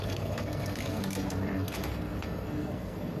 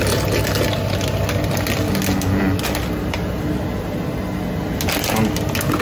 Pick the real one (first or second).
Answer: second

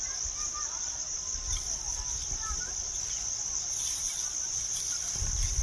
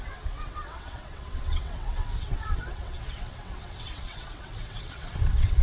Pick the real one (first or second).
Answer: first